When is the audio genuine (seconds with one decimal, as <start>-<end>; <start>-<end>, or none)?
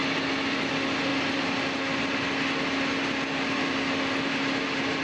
0.0-5.0